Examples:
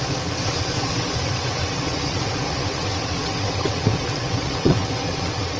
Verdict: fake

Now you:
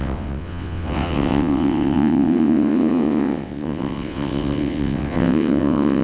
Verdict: fake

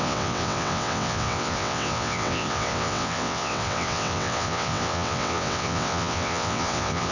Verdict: fake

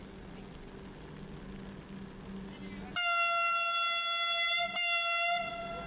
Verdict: real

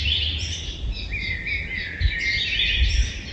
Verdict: real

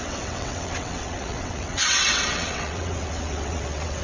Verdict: fake